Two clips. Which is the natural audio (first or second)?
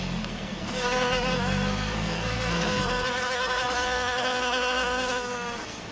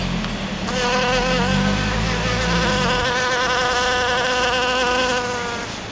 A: second